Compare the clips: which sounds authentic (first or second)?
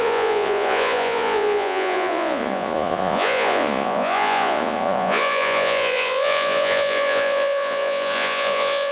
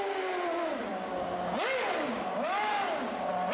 second